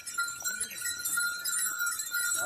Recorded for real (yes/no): no